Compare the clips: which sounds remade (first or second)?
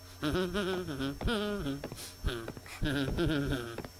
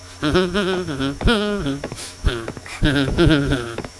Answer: second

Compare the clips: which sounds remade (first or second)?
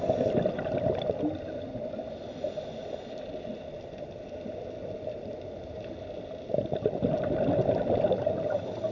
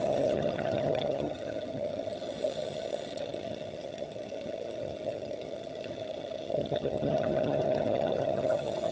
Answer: second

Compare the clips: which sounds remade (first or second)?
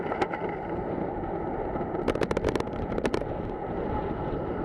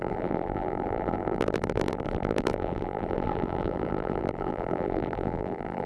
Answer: second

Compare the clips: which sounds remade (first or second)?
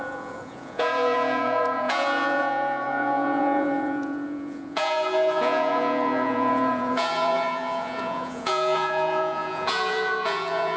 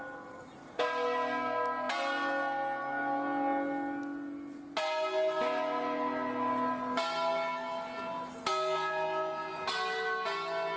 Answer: first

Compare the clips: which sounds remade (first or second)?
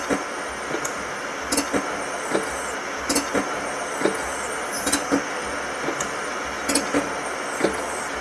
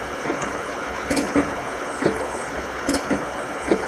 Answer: second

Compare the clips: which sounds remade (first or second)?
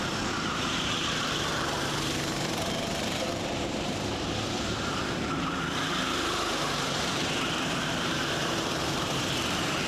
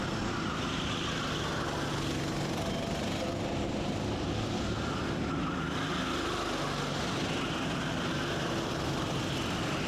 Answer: first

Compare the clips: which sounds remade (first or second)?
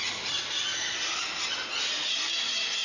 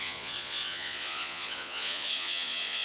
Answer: second